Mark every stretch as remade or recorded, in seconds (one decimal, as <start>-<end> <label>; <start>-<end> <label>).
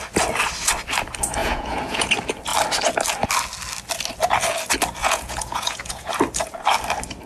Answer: 0.0-1.4 recorded; 1.4-2.1 remade; 2.1-5.0 recorded; 5.0-6.1 remade; 6.1-7.3 recorded